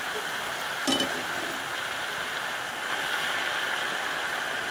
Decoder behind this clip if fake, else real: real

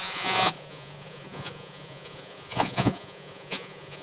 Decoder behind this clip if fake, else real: fake, vocoder, Vocos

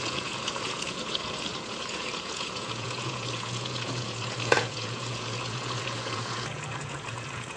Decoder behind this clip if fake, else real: fake, vocoder, Vocos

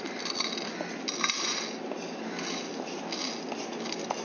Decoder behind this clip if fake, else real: real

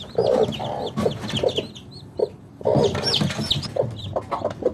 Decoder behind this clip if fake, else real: real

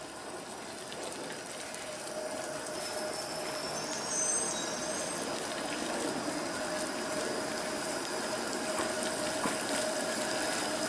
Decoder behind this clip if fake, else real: real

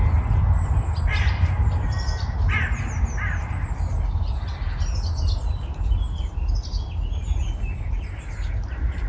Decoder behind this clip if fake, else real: real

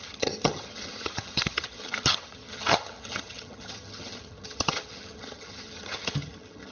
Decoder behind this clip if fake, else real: fake, vocoder, HiFi-GAN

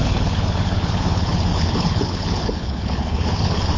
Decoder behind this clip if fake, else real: fake, codec, HILCodec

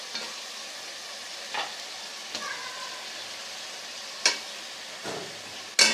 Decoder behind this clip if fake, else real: real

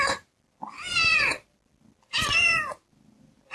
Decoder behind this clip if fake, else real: real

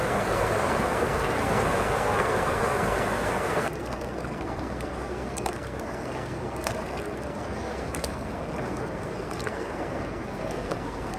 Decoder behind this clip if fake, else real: fake, codec, SNAC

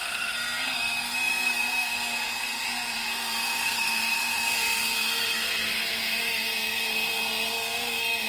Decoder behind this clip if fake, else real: fake, codec, SNAC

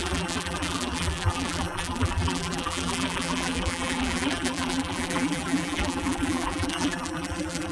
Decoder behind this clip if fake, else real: fake, vocoder, BigVGAN v2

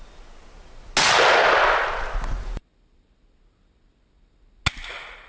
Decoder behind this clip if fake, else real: real